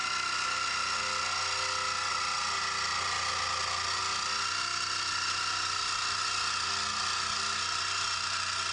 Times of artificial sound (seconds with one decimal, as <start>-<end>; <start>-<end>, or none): none

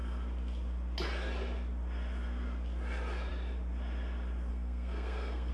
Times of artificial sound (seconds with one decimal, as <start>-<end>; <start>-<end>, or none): 4.5-5.5